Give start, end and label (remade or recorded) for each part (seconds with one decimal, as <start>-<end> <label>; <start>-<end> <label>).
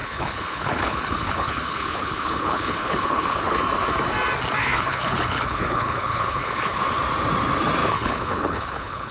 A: 0.0-3.6 remade; 3.6-4.6 recorded; 4.6-6.8 remade; 6.8-7.8 recorded; 7.8-9.1 remade